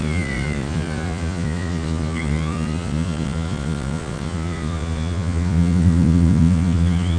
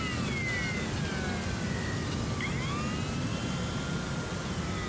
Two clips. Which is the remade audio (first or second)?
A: first